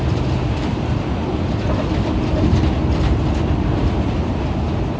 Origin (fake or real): real